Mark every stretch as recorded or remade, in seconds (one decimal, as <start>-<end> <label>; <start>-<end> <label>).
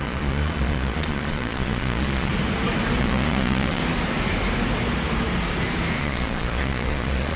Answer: 0.0-2.3 remade; 2.3-3.0 recorded; 3.0-3.8 remade; 3.8-6.0 recorded; 6.0-7.4 remade